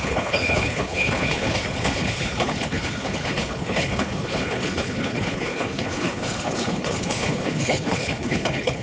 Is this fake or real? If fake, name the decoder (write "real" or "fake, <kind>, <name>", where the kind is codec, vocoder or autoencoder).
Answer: fake, codec, HILCodec